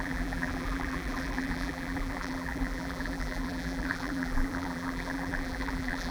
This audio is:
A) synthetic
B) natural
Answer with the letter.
A